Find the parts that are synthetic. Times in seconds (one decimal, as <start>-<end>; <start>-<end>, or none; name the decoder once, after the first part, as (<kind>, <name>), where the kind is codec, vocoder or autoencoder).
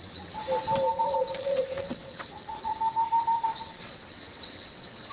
0.0-0.4 (vocoder, WaveNeXt); 1.0-2.7; 3.6-5.1